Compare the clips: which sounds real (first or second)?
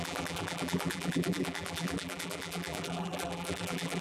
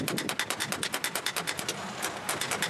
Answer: second